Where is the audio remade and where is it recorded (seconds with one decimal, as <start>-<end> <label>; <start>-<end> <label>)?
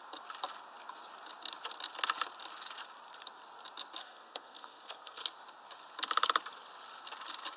0.0-4.0 recorded; 4.0-5.2 remade; 5.2-7.6 recorded